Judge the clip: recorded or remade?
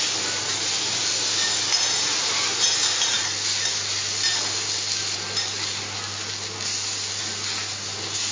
recorded